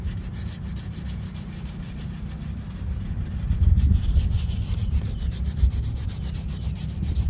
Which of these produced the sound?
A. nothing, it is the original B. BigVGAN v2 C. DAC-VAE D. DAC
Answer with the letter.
B